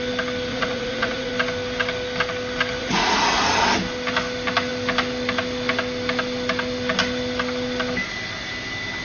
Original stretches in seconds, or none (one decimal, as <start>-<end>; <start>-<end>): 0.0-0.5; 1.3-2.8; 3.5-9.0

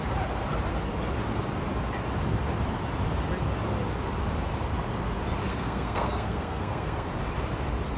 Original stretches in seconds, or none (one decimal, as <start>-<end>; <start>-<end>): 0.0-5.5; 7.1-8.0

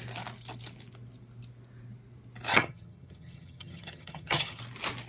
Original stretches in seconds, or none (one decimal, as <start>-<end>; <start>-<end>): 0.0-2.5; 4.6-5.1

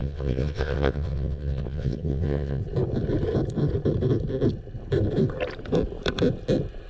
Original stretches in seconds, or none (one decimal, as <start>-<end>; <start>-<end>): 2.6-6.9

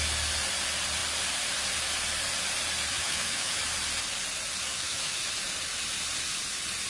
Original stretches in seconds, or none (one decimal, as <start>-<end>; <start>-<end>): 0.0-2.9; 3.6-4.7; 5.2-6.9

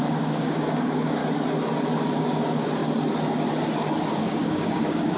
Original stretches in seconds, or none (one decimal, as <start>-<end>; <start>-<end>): 1.2-2.2; 2.8-4.1

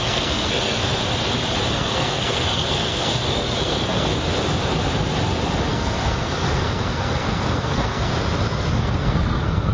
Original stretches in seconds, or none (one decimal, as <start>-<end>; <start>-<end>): 1.0-1.7; 4.1-5.7; 8.1-8.7

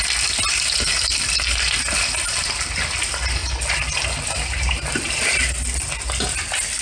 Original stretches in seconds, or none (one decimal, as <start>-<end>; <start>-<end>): 0.0-6.8